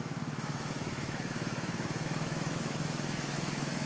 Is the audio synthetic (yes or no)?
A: yes